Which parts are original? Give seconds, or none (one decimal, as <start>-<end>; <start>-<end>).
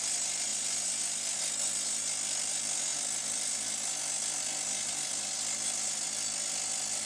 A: 0.0-7.1